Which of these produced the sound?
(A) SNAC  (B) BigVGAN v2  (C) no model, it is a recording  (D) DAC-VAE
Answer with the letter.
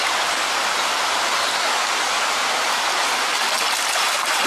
B